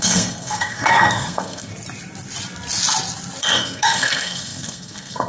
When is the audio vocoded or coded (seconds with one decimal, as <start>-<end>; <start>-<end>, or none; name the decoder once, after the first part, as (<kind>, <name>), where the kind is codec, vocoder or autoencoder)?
0.0-1.7 (codec, SNAC); 3.4-5.3